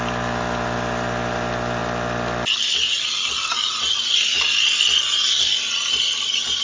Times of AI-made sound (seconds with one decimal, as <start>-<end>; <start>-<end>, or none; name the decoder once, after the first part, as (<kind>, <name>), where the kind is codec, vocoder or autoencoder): 0.0-1.8 (vocoder, BigVGAN v2); 5.3-6.6